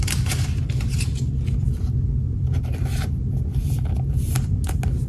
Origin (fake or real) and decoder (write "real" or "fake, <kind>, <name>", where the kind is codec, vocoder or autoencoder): real